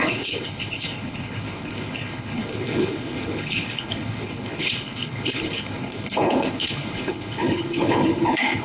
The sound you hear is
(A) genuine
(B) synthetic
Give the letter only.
B